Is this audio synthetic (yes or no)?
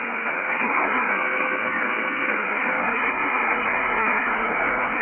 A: yes